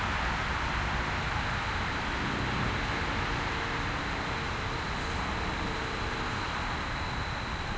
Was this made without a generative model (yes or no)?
yes